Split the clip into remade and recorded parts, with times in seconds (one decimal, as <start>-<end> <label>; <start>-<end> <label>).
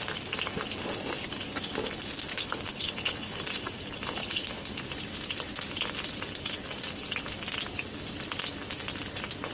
0.0-2.3 recorded; 2.3-3.4 remade; 3.4-4.2 recorded; 4.2-4.8 remade; 4.8-9.5 recorded